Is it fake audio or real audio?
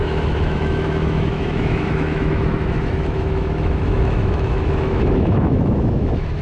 fake